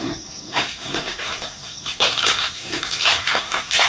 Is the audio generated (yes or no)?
yes